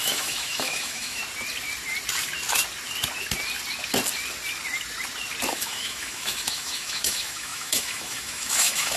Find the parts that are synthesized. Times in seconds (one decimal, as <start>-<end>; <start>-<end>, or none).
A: 0.0-1.2; 5.5-9.0